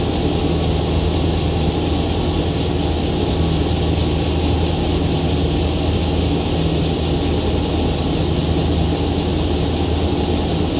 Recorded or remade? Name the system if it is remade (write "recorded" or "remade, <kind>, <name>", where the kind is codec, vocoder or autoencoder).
recorded